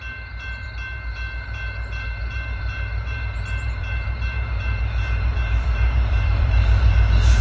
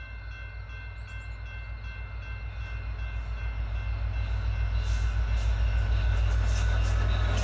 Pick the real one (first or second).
second